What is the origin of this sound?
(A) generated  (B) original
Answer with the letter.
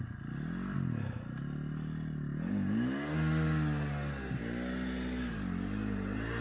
B